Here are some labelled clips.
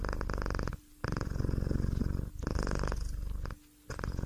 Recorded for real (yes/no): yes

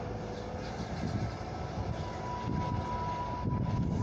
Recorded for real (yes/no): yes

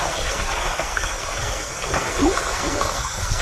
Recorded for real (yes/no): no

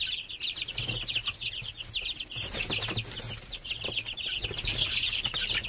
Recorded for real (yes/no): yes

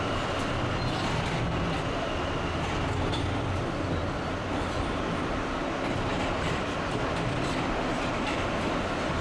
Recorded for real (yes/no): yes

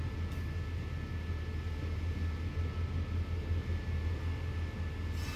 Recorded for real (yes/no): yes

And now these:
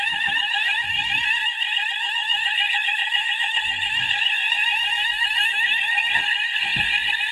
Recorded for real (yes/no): no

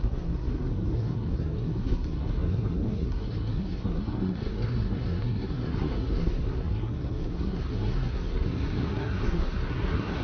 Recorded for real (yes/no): no